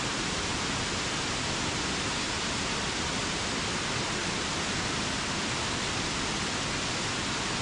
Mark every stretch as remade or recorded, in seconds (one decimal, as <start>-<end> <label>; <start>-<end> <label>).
0.0-7.6 recorded